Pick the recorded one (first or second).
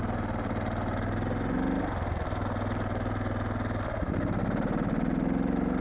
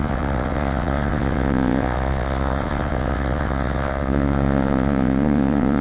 first